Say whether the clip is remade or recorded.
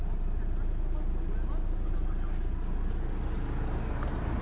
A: recorded